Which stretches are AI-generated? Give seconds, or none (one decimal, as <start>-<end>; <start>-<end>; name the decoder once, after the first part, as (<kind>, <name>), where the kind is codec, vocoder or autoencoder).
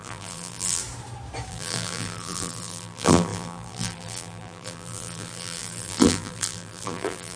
0.0-0.8 (vocoder, BigVGAN v2); 1.5-7.4